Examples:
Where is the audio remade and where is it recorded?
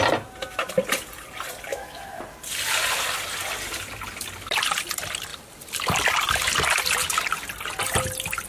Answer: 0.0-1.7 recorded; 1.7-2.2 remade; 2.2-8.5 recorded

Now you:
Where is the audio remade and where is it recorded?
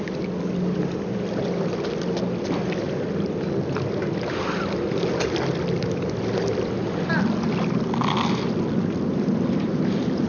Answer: 0.0-10.3 recorded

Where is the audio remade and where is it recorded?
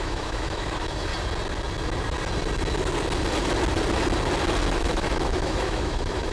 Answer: 0.0-1.1 remade; 1.1-4.7 recorded; 4.7-6.3 remade